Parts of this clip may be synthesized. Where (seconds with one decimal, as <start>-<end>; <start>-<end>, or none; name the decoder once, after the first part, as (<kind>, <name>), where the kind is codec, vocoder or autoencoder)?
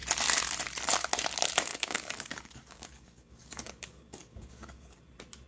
1.7-5.0 (codec, DAC)